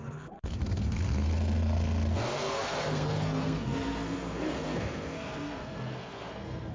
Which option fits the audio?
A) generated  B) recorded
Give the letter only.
A